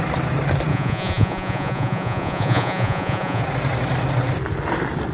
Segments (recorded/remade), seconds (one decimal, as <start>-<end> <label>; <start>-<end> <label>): 0.0-0.7 recorded; 0.7-3.4 remade; 3.4-5.1 recorded